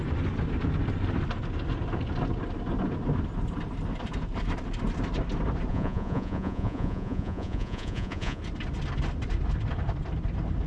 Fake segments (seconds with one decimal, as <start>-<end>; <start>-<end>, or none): 5.7-8.4